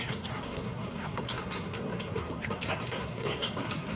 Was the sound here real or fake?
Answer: fake